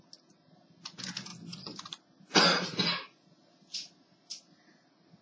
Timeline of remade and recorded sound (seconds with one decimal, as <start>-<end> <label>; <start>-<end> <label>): 0.0-5.2 recorded